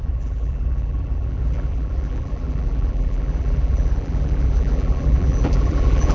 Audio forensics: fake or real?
fake